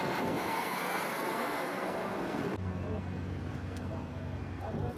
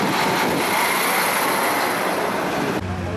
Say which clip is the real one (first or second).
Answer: second